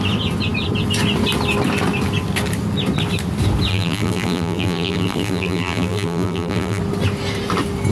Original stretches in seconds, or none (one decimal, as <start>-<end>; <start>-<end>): 0.0-3.7; 6.8-7.9